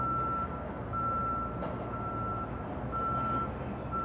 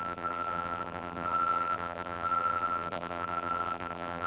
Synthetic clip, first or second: second